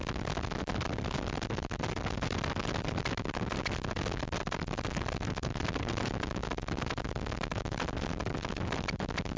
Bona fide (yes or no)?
yes